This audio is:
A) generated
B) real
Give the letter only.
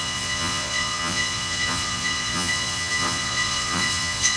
A